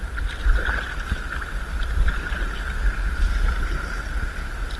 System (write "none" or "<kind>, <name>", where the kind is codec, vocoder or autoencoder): none